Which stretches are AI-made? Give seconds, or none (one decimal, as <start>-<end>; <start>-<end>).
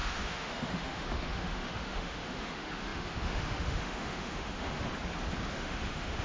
0.0-4.9; 5.5-6.2